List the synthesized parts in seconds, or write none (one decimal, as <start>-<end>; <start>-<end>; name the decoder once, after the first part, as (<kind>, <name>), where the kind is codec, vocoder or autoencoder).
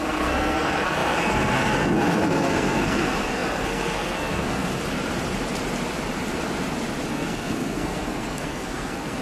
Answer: 0.0-4.7 (codec, SNAC); 7.1-9.2